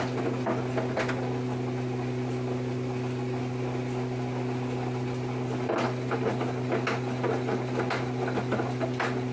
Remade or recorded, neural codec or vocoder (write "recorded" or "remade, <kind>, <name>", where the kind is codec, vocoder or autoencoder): recorded